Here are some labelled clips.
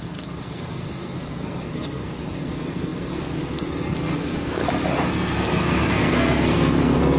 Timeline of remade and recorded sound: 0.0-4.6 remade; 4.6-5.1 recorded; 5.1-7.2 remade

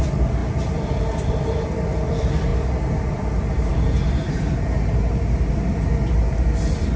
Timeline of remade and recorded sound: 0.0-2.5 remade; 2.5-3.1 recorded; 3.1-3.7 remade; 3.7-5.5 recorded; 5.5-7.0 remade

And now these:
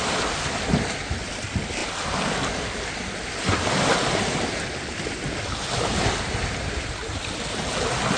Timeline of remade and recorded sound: 0.0-8.2 recorded